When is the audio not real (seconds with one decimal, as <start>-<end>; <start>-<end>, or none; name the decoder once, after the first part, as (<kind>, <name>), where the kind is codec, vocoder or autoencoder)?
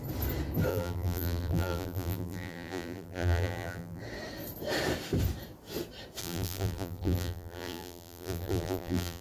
0.7-4.0 (vocoder, BigVGAN v2); 6.2-9.2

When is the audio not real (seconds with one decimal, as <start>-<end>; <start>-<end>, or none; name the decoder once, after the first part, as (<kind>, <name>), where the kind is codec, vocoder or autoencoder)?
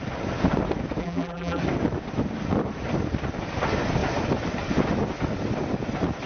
1.0-1.6 (vocoder, BigVGAN v2)